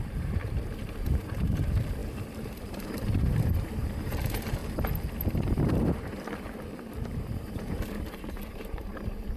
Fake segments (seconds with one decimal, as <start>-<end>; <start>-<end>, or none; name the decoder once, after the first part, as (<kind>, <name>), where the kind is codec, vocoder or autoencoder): 0.0-4.6 (vocoder, BigVGAN v2); 5.3-9.4